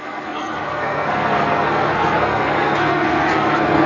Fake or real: fake